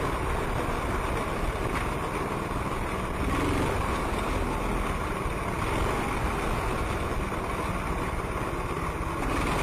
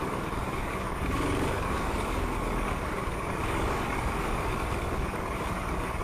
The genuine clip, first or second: first